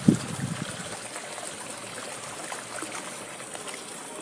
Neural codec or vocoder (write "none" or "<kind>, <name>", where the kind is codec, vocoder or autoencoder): none